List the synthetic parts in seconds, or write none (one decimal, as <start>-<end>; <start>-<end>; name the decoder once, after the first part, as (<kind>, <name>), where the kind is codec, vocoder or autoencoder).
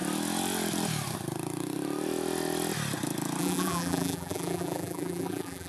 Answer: 3.4-5.7 (vocoder, BigVGAN v2)